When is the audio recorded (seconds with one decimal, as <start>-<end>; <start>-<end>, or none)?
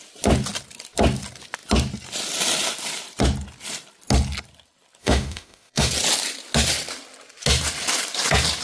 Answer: 0.0-5.0; 5.9-8.6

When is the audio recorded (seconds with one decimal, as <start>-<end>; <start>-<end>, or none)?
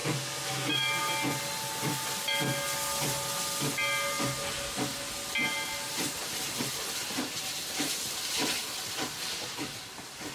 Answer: 0.0-10.3